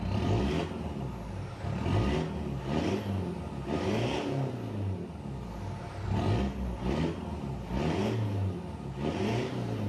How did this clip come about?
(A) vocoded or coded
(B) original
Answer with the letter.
B